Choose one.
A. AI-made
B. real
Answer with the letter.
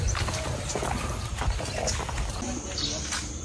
B